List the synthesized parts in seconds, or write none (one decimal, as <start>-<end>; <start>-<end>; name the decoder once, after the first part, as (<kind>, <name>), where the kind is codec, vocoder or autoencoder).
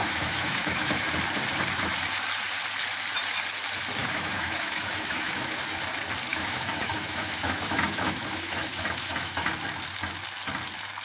0.0-1.0 (autoencoder, DAC-VAE); 4.0-5.6; 6.3-9.5